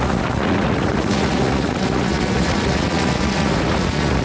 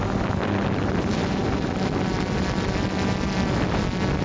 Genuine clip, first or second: second